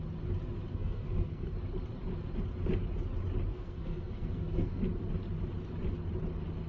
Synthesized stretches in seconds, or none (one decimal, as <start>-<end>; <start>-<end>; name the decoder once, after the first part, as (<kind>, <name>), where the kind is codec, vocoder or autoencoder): 0.7-1.5 (codec, SNAC); 3.5-4.8